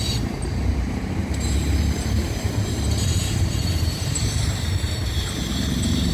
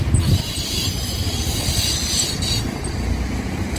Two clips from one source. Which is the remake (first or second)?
first